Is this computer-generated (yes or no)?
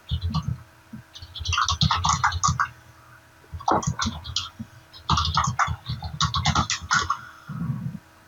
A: no